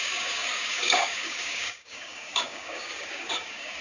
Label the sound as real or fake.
fake